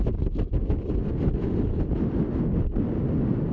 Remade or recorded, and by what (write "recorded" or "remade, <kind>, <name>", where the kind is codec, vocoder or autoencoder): recorded